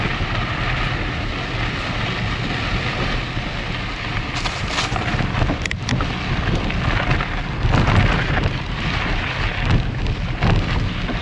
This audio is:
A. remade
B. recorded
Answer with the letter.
B